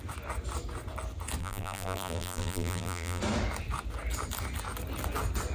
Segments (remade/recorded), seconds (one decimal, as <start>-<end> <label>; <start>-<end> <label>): 0.0-1.4 recorded; 1.4-3.2 remade; 3.2-5.5 recorded